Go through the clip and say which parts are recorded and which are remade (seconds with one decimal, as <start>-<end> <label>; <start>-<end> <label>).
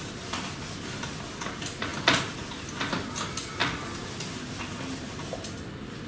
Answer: 0.0-6.1 recorded